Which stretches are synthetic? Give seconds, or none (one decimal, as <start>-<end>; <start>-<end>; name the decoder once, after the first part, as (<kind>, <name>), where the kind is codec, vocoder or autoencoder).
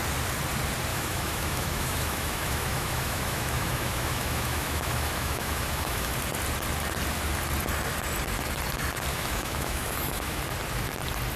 0.9-6.1 (autoencoder, DAC-VAE); 9.1-10.4